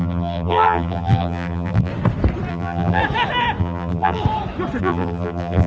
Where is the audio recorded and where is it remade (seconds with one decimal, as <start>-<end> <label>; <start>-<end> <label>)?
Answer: 0.0-1.9 remade; 1.9-2.5 recorded; 2.5-3.0 remade; 3.0-3.6 recorded; 3.6-4.2 remade; 4.2-4.8 recorded; 4.8-5.7 remade